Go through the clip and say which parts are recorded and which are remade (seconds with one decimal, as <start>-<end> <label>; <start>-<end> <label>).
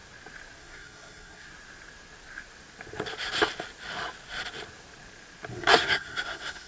0.0-0.6 recorded; 0.6-1.5 remade; 1.5-5.5 recorded; 5.5-6.7 remade